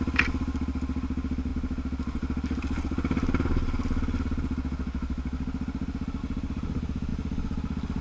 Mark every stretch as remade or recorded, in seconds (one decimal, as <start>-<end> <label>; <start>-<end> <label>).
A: 0.0-8.0 recorded